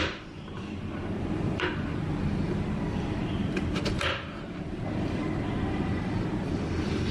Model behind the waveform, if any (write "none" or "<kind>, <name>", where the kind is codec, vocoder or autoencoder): vocoder, BigVGAN v2